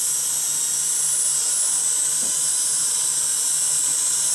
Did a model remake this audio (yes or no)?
no